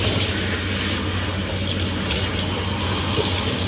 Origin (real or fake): real